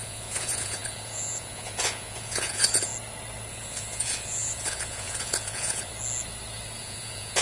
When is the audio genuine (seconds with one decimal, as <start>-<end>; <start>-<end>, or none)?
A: 2.9-3.5; 5.9-6.8